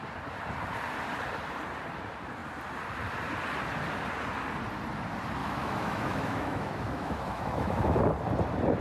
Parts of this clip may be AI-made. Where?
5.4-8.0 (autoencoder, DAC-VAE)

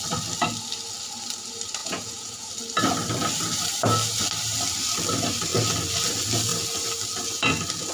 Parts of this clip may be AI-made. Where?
1.8-2.5 (vocoder, Vocos)

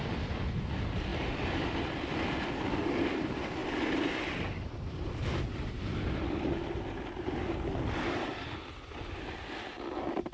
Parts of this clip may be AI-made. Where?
none

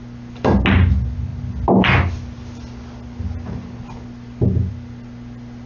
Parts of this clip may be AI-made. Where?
none

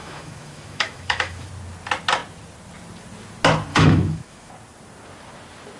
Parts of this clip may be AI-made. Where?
0.0-1.5 (autoencoder, DAC-VAE); 3.7-4.5

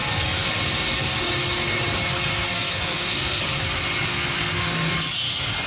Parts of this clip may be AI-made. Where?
2.5-3.4 (codec, SNAC); 4.1-4.7

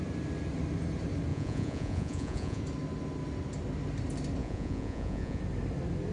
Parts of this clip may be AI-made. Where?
1.3-2.6 (vocoder, Vocos); 4.4-5.4

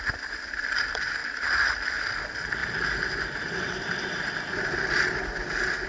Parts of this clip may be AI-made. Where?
none